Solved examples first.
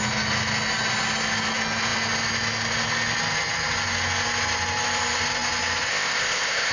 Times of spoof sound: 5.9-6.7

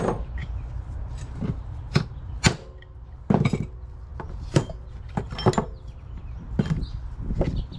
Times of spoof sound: none